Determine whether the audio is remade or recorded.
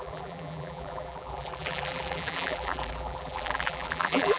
remade